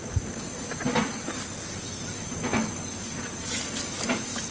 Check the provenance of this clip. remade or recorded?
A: remade